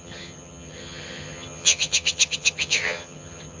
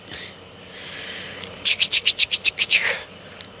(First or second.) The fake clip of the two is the first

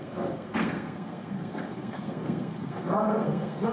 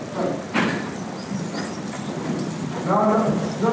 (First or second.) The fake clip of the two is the first